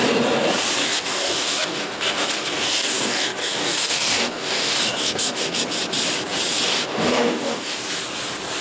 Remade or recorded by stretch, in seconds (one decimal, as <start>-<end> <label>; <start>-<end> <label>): 0.0-0.8 recorded; 0.8-5.6 remade; 5.6-6.7 recorded; 6.7-7.8 remade; 7.8-8.6 recorded